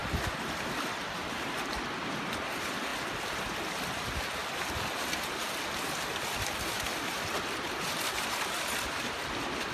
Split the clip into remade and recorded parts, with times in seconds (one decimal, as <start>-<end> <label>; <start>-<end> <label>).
0.0-1.7 remade; 1.7-4.4 recorded; 4.4-7.3 remade; 7.3-9.7 recorded